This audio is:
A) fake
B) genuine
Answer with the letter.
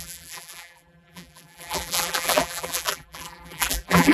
A